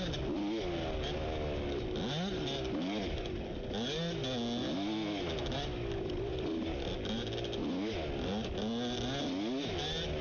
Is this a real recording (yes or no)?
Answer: yes